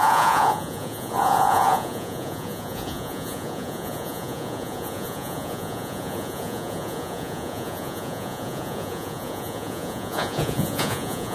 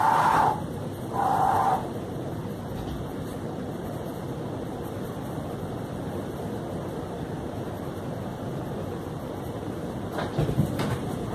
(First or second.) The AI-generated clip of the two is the first